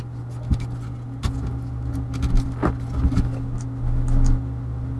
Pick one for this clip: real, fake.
real